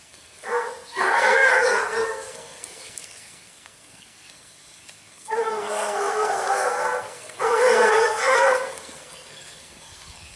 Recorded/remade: remade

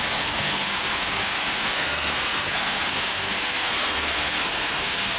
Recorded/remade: remade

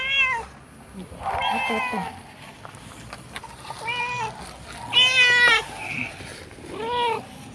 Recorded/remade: recorded